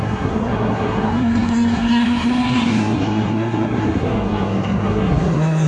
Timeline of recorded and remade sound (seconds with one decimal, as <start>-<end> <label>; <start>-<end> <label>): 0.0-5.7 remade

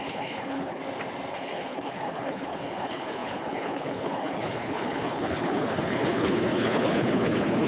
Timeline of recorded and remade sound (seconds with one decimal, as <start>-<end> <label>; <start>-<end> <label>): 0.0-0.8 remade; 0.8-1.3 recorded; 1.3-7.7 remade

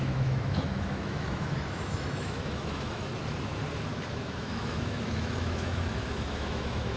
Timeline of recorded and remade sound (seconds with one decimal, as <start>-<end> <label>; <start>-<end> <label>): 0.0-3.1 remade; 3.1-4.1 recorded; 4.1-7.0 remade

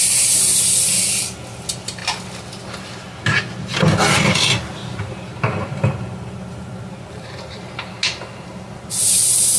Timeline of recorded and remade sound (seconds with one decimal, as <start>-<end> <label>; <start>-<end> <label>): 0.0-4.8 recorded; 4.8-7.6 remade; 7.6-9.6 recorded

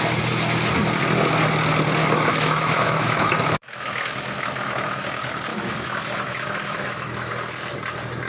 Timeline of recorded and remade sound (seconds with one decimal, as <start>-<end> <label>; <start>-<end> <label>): 0.0-2.0 recorded; 2.0-5.0 remade; 5.0-5.5 recorded; 5.5-7.3 remade; 7.3-8.3 recorded

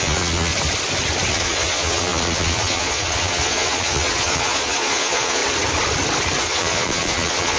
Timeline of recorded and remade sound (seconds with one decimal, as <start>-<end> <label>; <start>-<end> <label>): 0.0-0.5 remade; 0.5-1.3 recorded; 1.3-5.4 remade; 5.4-6.4 recorded; 6.4-7.6 remade